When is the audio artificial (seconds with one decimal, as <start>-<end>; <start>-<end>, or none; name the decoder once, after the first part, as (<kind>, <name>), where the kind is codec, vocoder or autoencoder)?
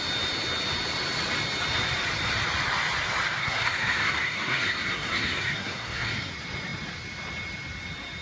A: 3.4-6.3 (codec, SNAC)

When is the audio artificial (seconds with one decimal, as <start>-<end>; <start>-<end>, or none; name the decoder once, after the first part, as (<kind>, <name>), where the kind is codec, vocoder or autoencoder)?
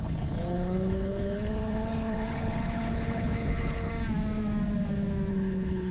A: 0.0-3.9 (codec, HILCodec); 5.3-5.9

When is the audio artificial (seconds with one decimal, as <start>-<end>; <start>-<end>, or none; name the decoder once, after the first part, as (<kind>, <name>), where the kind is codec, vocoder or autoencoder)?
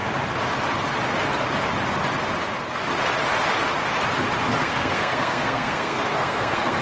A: 4.6-6.8 (codec, SNAC)